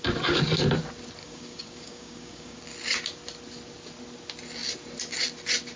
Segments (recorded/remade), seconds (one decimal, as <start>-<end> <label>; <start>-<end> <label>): 0.0-1.2 recorded; 1.2-2.6 remade; 2.6-5.8 recorded